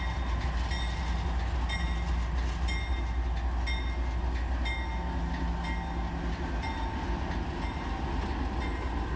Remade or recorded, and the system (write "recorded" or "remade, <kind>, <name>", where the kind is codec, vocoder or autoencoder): recorded